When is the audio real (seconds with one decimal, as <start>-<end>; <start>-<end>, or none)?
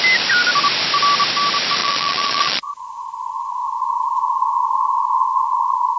0.0-1.8; 3.5-6.0